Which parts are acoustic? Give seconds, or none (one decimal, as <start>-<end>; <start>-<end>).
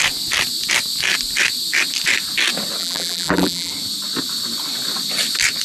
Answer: 0.0-2.8; 3.7-5.6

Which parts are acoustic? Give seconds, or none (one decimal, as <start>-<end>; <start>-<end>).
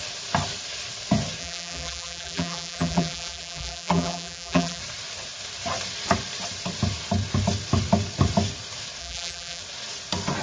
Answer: 0.0-1.4; 4.8-9.0; 9.6-10.4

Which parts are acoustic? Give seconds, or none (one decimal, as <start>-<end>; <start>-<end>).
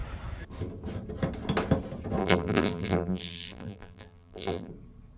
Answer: 0.0-2.2; 4.7-5.2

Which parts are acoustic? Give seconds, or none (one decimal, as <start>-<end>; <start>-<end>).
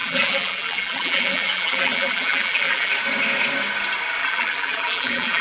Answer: 2.9-4.2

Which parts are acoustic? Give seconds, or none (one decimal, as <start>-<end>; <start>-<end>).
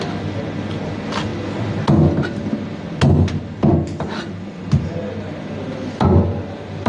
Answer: 0.0-6.9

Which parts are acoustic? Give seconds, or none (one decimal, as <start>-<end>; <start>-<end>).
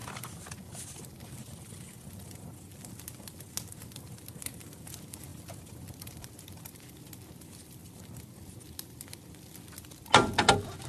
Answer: 0.5-10.9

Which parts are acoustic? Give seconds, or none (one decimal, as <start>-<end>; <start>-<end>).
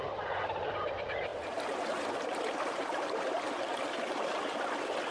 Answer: 0.0-1.3; 4.4-5.1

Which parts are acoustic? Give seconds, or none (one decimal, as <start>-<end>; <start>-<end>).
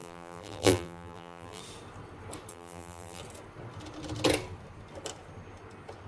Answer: 1.6-2.5; 3.2-6.1